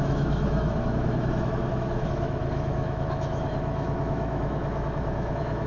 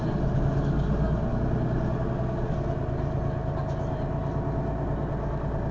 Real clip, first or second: second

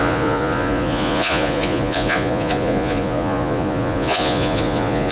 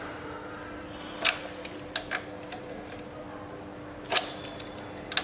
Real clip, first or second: second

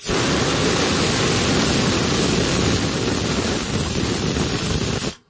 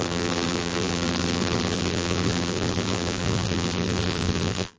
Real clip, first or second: first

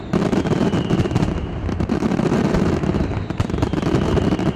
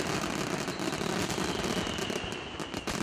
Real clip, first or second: second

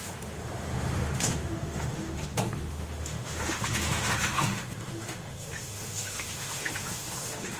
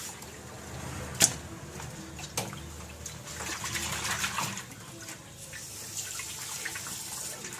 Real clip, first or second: second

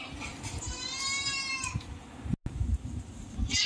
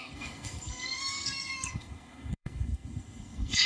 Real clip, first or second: first